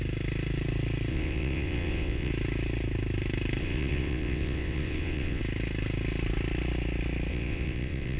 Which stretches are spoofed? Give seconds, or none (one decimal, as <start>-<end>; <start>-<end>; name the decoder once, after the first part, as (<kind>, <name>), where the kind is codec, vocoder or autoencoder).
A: 1.1-2.3 (vocoder, WaveNeXt); 3.6-5.4; 7.3-8.2